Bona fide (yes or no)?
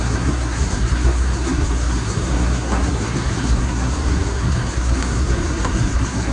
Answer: no